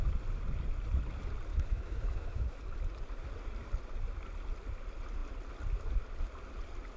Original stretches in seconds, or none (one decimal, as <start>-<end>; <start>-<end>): 0.0-1.5; 2.6-7.0